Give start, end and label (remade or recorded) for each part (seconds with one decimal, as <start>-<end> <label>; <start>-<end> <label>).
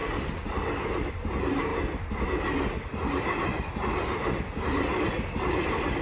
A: 0.0-6.0 recorded